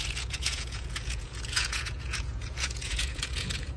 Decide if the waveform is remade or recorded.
remade